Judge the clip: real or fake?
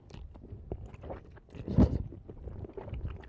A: real